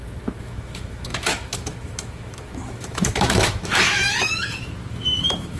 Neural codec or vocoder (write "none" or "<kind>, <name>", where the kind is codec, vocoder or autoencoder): autoencoder, DAC-VAE